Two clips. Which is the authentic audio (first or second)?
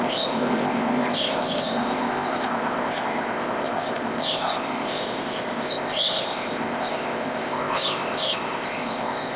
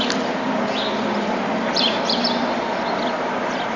second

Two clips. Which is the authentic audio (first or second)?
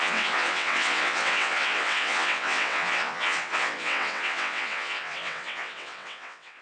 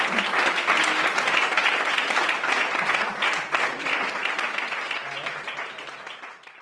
second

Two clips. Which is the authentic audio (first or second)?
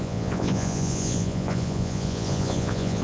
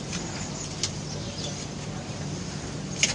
second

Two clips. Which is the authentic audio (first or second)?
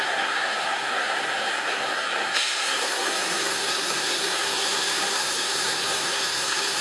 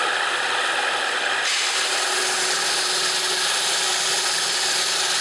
second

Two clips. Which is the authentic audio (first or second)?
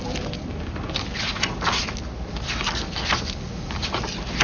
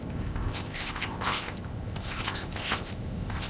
first